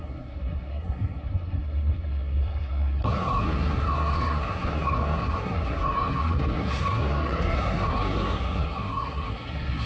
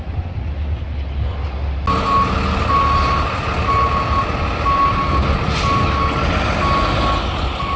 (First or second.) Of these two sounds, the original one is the second